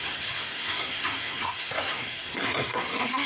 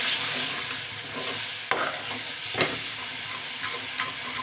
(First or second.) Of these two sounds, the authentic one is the second